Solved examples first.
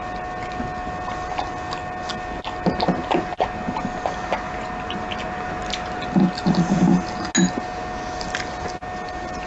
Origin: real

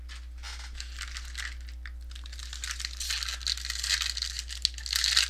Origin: real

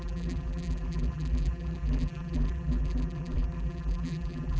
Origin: fake